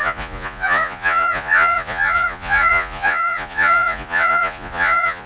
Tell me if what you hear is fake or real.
fake